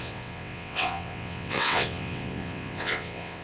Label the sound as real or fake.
fake